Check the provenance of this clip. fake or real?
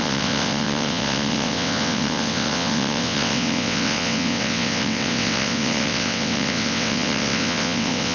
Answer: fake